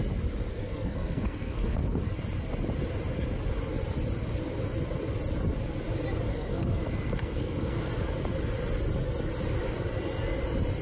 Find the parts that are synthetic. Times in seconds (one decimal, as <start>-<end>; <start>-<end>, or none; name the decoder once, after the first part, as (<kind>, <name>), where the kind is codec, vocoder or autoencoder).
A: 0.5-2.0 (codec, SNAC); 6.3-7.9